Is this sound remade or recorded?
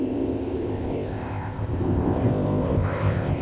remade